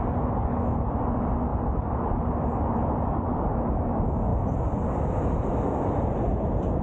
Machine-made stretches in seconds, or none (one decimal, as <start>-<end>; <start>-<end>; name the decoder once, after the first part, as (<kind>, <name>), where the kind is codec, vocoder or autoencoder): none